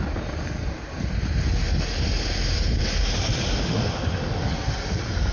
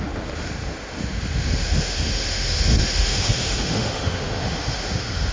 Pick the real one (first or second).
first